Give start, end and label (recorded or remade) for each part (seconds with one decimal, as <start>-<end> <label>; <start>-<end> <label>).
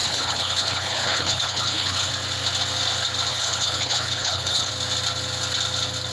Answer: 0.0-2.1 remade; 2.1-3.3 recorded; 3.3-4.7 remade; 4.7-6.1 recorded